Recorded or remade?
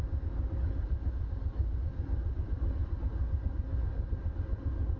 recorded